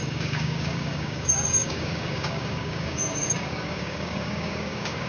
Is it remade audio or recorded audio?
remade